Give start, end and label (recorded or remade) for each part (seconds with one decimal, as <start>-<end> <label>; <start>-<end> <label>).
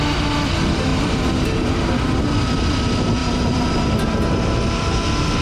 0.0-0.9 recorded; 0.9-1.9 remade; 1.9-3.2 recorded; 3.2-3.8 remade; 3.8-5.4 recorded